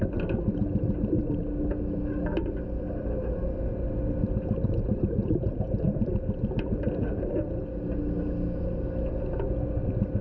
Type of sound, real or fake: real